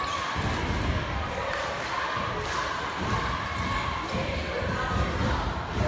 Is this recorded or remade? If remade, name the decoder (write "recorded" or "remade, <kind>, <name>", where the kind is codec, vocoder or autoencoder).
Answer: recorded